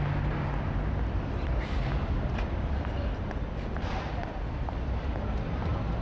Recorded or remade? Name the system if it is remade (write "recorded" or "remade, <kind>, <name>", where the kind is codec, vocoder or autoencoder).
recorded